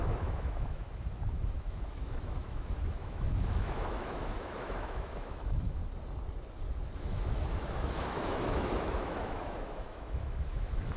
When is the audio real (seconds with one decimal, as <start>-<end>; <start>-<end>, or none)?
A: 5.8-7.0